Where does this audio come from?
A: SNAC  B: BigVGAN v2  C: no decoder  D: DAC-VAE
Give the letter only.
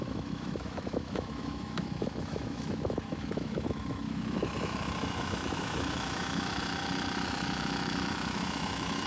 D